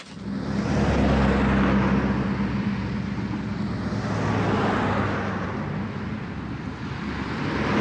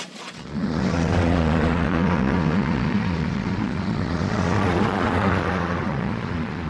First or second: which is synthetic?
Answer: second